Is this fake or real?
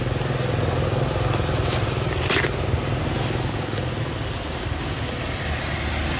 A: real